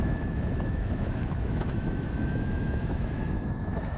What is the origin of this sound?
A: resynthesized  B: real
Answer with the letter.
A